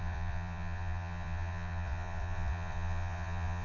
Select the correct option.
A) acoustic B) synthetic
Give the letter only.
B